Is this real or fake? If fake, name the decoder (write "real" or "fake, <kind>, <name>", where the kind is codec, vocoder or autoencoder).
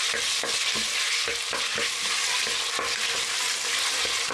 real